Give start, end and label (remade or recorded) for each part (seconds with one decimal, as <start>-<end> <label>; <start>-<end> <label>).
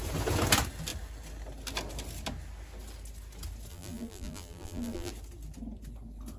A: 0.0-3.7 recorded; 3.7-5.1 remade; 5.1-6.4 recorded